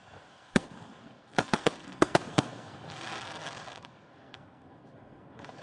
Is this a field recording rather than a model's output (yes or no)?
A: no